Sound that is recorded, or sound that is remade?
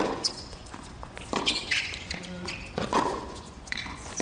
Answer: remade